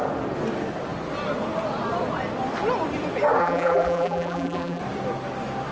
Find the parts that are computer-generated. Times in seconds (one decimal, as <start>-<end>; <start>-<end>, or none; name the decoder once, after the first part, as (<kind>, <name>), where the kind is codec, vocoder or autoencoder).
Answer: 3.4-4.8 (vocoder, BigVGAN v2)